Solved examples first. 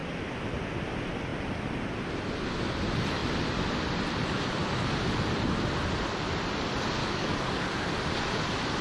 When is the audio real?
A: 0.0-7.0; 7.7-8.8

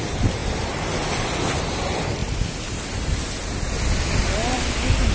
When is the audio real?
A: 0.0-5.1

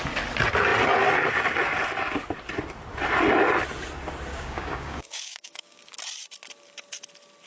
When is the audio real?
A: 0.0-4.3; 6.0-7.5